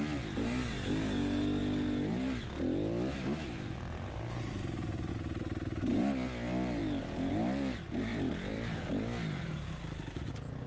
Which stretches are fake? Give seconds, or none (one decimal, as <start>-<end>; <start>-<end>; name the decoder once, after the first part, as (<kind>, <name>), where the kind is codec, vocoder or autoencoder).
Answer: 8.1-8.9 (vocoder, BigVGAN v2)